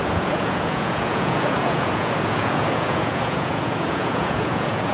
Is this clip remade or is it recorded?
remade